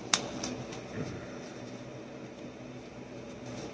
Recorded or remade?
recorded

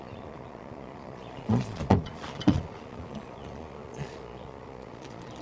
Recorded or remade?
remade